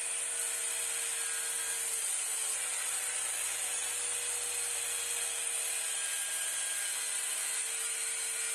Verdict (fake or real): real